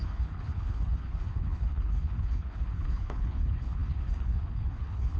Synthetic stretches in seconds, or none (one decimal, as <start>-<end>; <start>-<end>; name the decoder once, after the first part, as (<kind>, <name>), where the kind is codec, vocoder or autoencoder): 0.0-5.2 (codec, HILCodec)